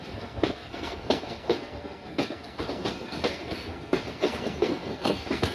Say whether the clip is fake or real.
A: fake